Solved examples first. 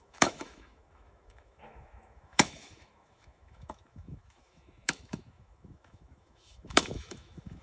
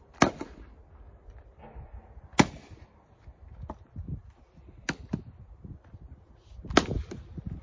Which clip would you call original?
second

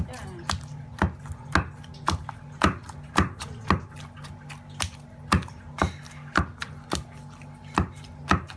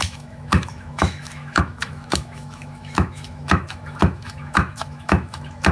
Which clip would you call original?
first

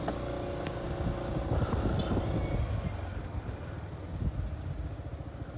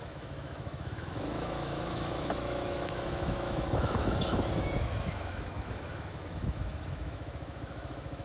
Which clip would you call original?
first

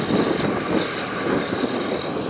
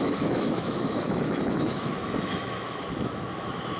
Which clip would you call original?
first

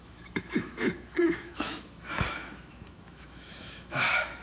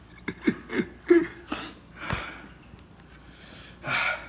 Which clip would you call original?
second